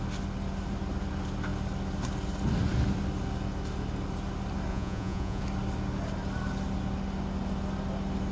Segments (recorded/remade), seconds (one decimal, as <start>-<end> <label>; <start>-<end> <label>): 0.0-4.7 recorded; 4.7-5.4 remade; 5.4-8.3 recorded